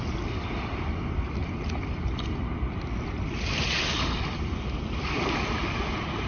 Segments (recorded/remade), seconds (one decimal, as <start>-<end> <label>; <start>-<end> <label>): 0.0-6.3 recorded